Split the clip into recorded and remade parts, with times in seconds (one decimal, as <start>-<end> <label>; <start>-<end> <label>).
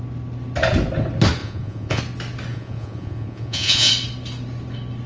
0.0-1.4 recorded; 1.4-2.0 remade; 2.0-2.5 recorded; 2.5-3.9 remade; 3.9-5.1 recorded